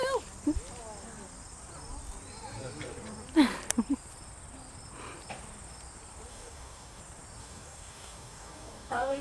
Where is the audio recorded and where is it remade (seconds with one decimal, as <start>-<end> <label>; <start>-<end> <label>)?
0.0-6.3 recorded; 6.3-7.0 remade; 7.0-7.4 recorded; 7.4-9.2 remade